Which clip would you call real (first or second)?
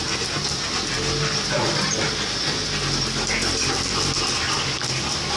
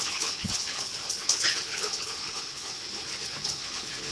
first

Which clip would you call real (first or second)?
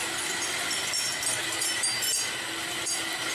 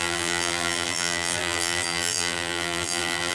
first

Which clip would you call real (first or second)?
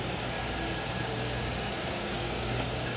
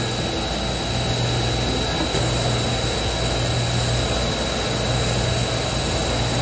second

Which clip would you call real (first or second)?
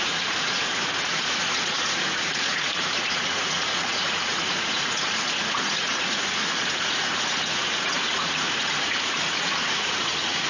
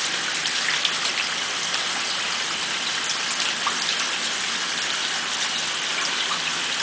second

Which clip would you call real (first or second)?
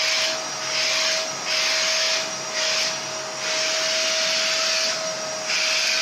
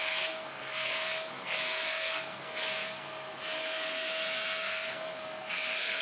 first